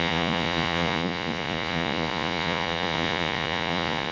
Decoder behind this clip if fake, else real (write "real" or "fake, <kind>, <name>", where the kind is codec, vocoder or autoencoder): fake, vocoder, Vocos